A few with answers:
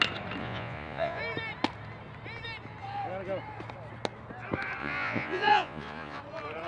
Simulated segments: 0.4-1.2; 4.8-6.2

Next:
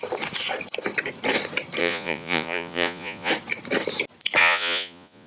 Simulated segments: 1.8-3.3; 4.4-5.3

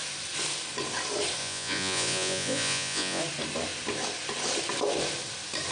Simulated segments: 1.4-3.2

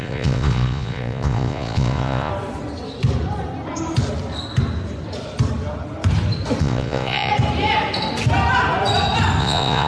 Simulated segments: 0.0-2.3; 6.6-7.3; 9.4-9.9